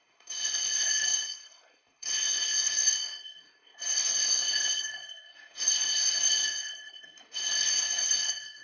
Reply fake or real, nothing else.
fake